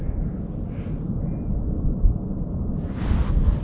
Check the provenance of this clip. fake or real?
real